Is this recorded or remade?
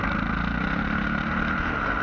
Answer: recorded